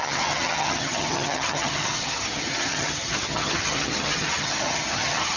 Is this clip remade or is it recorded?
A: remade